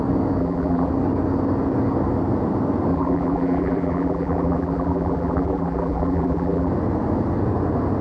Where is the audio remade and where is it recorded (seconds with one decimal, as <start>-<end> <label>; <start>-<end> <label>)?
0.0-0.4 recorded; 0.4-0.9 remade; 0.9-2.9 recorded; 2.9-6.7 remade; 6.7-8.0 recorded

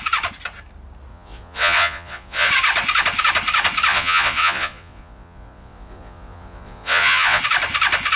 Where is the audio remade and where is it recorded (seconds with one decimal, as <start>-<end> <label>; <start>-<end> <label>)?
0.0-1.1 recorded; 1.1-2.5 remade; 2.5-3.9 recorded; 3.9-7.4 remade; 7.4-8.2 recorded

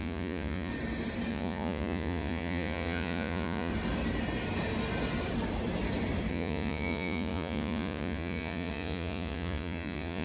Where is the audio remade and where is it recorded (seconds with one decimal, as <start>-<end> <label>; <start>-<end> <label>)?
0.0-0.7 remade; 0.7-1.3 recorded; 1.3-3.7 remade; 3.7-6.3 recorded; 6.3-10.2 remade

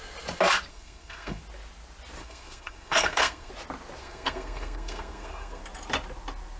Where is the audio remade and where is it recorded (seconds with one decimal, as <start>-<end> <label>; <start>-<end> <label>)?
0.0-0.7 recorded; 0.7-1.4 remade; 1.4-2.2 recorded; 2.2-3.5 remade; 3.5-4.0 recorded; 4.0-5.6 remade; 5.6-6.6 recorded

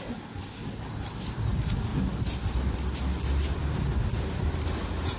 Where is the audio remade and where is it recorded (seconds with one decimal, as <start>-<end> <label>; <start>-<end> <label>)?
0.0-5.2 recorded

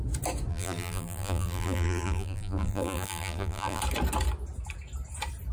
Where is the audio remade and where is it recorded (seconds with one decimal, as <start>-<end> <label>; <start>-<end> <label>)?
0.0-0.5 recorded; 0.5-3.8 remade; 3.8-5.5 recorded

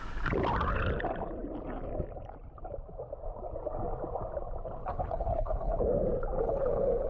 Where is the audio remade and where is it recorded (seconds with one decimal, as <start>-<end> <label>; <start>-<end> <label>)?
0.0-4.8 recorded; 4.8-5.8 remade; 5.8-6.4 recorded; 6.4-7.1 remade